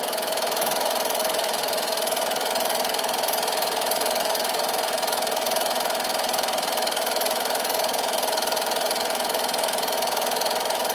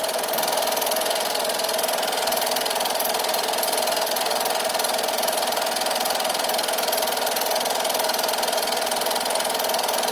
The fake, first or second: first